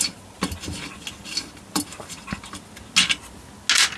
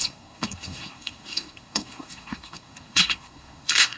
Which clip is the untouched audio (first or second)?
first